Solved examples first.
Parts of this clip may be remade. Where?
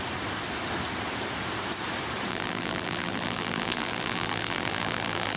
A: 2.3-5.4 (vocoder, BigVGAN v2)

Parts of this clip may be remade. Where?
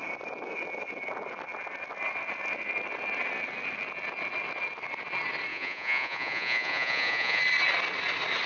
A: 5.5-7.4 (vocoder, Vocos)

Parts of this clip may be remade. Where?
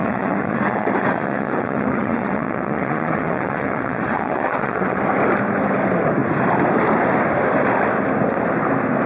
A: 0.0-5.0 (vocoder, WaveNeXt)